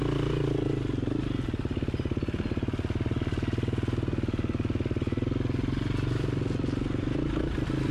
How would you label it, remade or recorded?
recorded